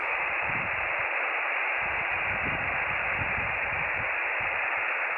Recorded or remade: remade